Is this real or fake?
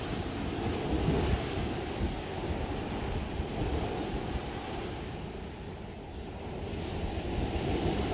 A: real